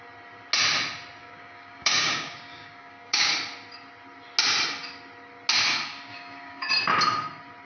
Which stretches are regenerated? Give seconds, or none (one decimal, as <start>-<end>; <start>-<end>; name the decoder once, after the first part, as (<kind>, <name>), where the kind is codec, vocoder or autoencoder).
1.2-3.3 (codec, DAC); 6.1-6.7